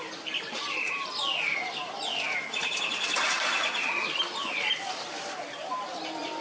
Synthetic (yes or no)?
no